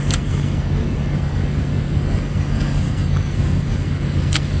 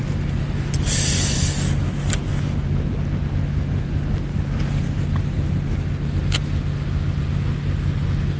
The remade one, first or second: first